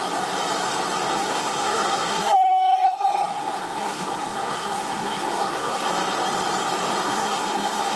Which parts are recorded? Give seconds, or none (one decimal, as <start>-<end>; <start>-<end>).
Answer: 0.0-1.1; 5.9-7.0